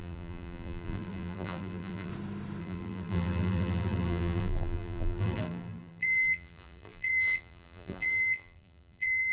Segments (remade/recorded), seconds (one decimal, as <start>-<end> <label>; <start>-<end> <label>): 0.0-2.1 remade; 2.1-2.6 recorded; 2.6-9.3 remade